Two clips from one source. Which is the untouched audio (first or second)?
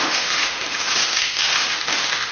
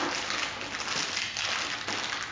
second